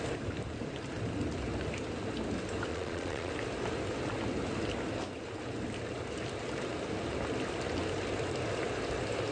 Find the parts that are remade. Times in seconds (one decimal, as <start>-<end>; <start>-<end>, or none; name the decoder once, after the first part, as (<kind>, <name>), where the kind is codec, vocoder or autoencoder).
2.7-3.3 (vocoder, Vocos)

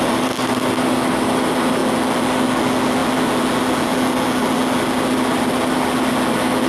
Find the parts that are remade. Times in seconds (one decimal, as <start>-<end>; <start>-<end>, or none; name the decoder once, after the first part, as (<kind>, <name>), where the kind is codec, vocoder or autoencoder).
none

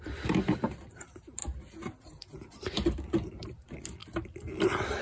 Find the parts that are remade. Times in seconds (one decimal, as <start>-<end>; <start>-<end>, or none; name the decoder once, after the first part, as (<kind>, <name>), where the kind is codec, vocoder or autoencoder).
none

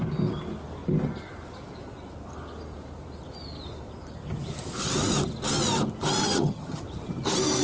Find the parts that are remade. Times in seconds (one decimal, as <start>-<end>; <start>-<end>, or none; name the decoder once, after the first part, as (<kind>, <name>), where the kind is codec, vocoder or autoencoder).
6.2-6.8 (vocoder, HiFi-GAN)

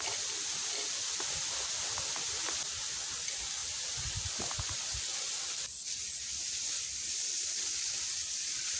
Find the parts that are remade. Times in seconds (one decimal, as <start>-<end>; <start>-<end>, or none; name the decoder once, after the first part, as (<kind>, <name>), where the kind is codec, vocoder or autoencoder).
3.6-4.4 (vocoder, BigVGAN v2)